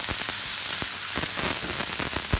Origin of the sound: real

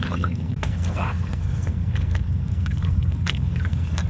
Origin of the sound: fake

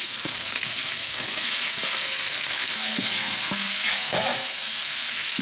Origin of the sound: fake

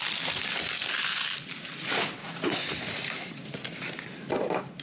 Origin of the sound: real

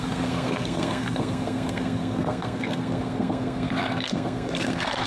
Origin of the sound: fake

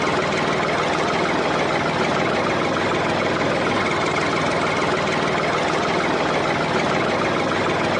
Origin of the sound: real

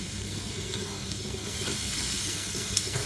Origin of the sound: fake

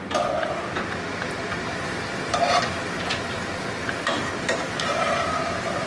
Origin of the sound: real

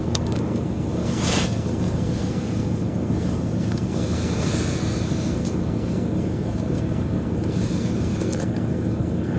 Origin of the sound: fake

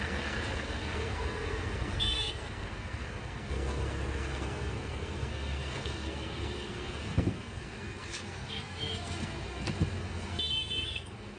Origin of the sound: fake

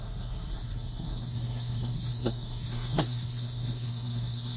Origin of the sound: fake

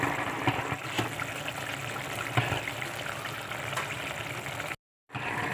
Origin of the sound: real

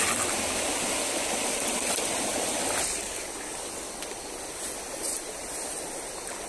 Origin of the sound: real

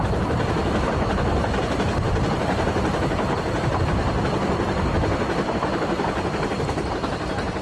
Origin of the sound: real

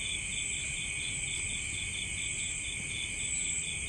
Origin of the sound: real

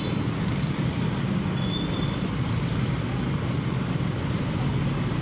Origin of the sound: real